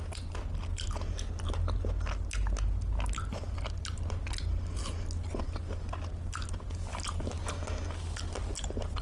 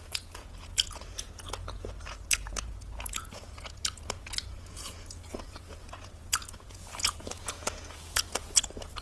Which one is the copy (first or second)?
second